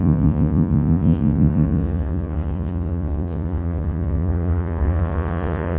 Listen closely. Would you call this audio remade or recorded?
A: remade